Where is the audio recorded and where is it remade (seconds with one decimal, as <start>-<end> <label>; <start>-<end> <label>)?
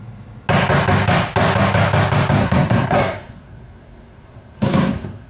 0.0-2.4 recorded; 2.4-5.3 remade